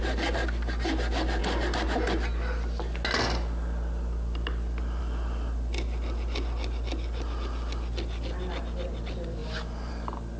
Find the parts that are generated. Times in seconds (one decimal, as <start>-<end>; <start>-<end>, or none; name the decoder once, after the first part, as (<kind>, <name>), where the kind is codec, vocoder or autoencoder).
none